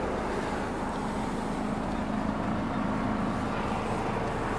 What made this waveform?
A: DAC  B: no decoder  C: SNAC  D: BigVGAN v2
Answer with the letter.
B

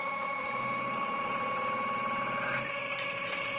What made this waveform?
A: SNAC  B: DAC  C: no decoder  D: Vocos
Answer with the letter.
C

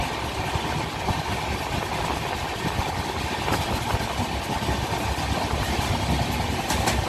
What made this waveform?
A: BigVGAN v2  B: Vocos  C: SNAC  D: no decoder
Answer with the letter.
D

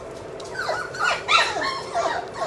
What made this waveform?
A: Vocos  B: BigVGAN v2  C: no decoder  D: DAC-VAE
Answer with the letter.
B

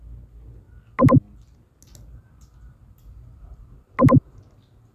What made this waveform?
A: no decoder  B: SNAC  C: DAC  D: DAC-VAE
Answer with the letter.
A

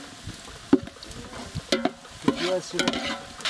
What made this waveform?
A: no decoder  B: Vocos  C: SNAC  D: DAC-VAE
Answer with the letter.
A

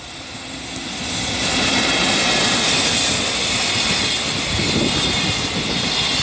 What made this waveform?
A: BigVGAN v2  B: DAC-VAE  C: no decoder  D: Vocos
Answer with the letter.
C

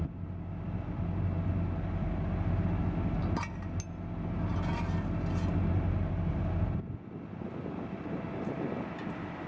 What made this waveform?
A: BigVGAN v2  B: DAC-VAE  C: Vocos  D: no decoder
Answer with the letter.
D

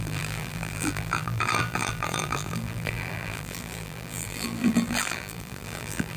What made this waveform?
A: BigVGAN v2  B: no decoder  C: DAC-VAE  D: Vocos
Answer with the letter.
A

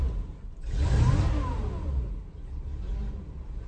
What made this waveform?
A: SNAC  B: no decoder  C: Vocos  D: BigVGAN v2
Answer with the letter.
B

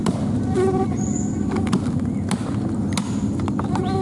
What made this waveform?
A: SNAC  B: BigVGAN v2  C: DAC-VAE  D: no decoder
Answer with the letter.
D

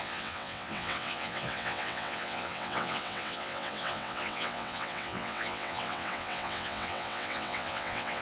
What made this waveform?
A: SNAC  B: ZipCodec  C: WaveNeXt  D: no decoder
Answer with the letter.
C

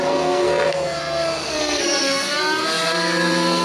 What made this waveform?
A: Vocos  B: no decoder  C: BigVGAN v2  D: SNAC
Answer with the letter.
D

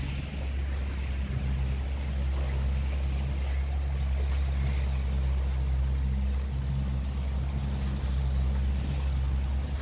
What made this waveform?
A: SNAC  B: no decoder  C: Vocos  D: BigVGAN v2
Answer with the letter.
B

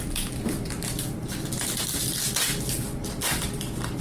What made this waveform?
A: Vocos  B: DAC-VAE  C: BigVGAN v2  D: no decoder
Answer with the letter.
D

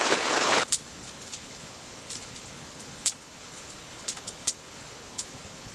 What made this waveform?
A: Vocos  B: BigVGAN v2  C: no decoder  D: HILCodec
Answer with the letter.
D